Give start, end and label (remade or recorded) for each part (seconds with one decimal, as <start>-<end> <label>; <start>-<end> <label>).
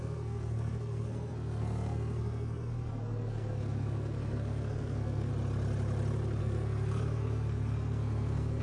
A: 0.0-5.3 remade; 5.3-6.4 recorded; 6.4-8.6 remade